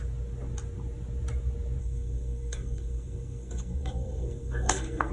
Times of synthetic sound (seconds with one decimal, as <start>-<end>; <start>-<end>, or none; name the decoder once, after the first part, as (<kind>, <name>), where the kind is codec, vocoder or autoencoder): 1.8-5.1 (codec, SNAC)